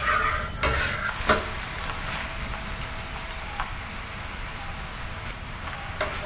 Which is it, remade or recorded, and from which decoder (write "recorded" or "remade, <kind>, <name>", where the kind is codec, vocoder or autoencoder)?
recorded